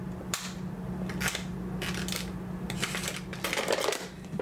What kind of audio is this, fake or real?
fake